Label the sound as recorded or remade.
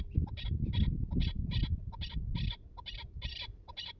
recorded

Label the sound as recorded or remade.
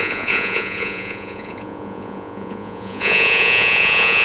remade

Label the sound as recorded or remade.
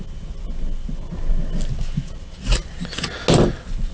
recorded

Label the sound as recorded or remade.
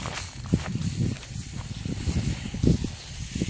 recorded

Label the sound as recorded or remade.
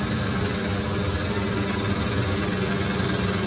recorded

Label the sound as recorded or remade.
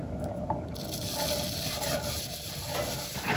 recorded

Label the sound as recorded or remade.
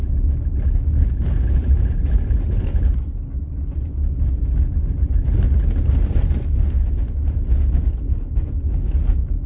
recorded